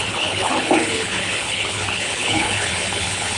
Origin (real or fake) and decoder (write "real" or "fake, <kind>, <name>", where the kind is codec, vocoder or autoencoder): fake, codec, HILCodec